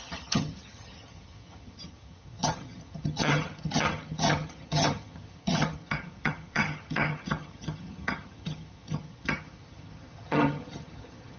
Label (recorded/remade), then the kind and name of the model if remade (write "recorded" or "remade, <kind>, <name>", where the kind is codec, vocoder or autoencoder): remade, vocoder, HiFi-GAN